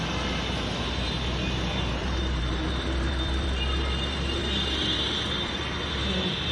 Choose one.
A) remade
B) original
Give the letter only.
A